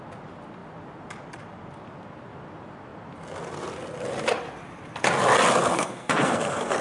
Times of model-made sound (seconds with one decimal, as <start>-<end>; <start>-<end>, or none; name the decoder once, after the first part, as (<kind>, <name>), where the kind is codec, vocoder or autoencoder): 5.6-6.8 (codec, SNAC)

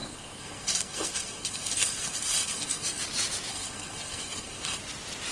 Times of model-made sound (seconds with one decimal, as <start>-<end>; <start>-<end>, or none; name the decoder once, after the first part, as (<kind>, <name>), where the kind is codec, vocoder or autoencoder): 0.0-3.0 (codec, SNAC); 3.5-4.8

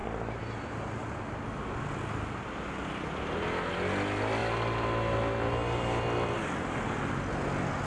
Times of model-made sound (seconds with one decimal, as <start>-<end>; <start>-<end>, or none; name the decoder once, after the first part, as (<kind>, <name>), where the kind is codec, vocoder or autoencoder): none

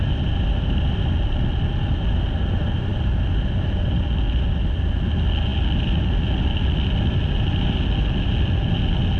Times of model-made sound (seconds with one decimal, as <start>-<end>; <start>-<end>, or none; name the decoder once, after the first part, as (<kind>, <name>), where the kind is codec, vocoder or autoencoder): none